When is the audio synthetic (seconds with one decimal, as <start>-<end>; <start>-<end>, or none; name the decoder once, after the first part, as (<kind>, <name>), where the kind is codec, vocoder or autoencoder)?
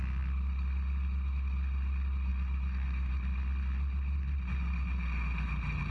2.3-3.1 (autoencoder, DAC-VAE)